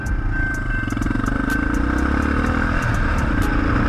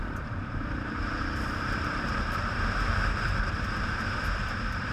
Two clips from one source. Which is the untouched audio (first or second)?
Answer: first